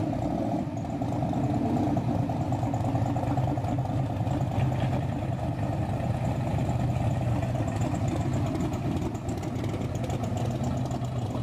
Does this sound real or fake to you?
real